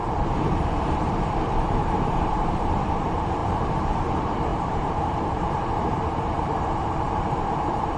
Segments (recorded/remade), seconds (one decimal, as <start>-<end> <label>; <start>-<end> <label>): 0.0-8.0 remade